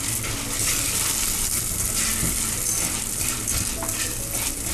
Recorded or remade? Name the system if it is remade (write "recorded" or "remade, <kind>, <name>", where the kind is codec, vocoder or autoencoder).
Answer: recorded